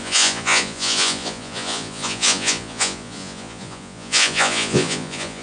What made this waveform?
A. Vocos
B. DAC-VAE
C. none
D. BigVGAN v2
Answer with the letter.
A